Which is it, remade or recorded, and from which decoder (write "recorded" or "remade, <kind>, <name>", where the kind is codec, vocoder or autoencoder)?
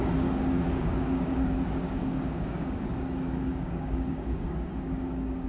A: remade, codec, DAC